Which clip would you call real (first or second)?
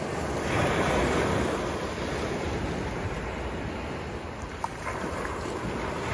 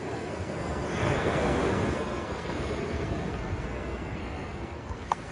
first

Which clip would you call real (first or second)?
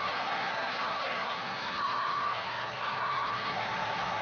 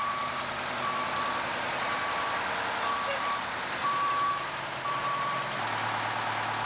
second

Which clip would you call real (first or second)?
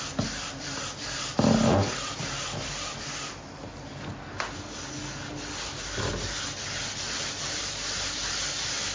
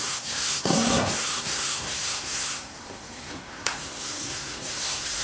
first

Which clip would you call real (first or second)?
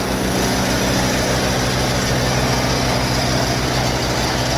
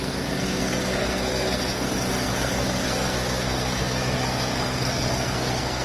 first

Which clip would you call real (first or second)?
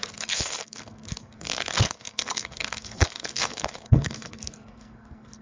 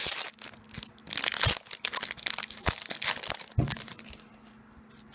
second